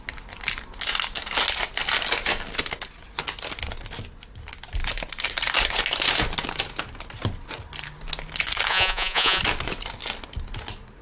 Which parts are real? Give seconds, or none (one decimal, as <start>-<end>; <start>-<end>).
0.0-8.7; 9.4-11.0